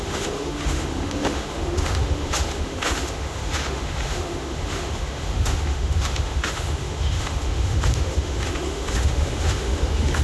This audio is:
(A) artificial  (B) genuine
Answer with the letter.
A